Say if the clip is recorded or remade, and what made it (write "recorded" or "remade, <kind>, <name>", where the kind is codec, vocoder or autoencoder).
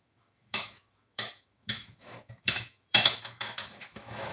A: remade, autoencoder, DAC-VAE